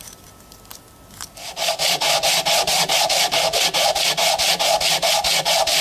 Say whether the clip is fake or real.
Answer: real